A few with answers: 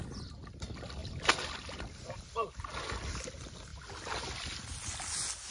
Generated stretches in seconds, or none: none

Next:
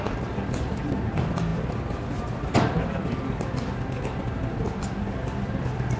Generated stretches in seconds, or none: none

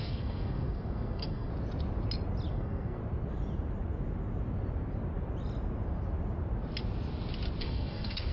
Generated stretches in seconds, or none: 0.0-1.5 (codec, SNAC); 2.5-3.0; 7.6-8.3